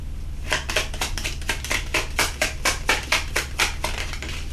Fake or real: fake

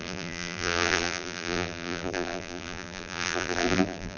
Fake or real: fake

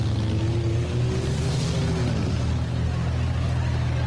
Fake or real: real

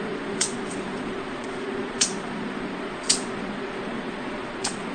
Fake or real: fake